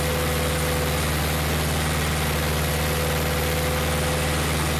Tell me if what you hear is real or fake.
real